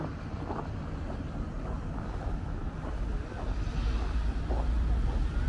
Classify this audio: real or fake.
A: real